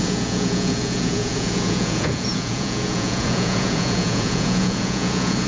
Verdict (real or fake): fake